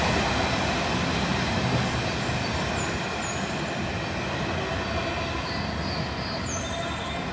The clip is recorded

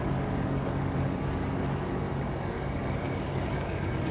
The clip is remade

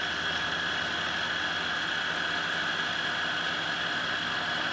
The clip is recorded